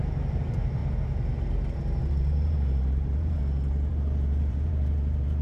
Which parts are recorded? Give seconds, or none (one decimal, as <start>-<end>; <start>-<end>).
0.8-2.0; 3.4-3.9